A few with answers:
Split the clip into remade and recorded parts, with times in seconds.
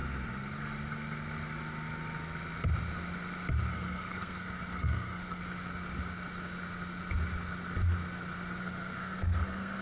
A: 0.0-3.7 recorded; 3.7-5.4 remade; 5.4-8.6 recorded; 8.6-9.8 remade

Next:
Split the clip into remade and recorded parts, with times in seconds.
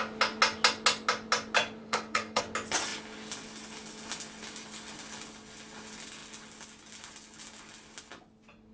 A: 0.0-1.8 recorded; 1.8-2.4 remade; 2.4-8.7 recorded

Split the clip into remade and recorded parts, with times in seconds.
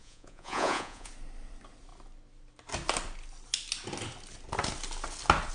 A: 0.0-1.1 remade; 1.1-5.5 recorded